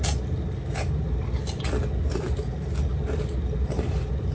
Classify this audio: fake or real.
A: real